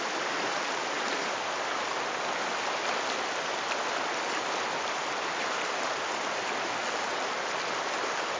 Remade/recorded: remade